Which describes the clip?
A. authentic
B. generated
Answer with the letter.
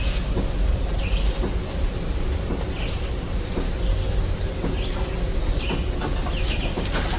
A